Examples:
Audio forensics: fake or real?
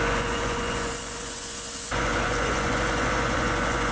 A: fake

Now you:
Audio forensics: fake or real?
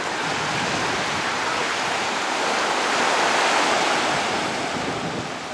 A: real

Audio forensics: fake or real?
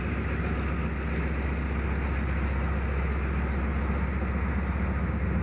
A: real